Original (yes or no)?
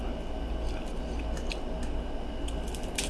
yes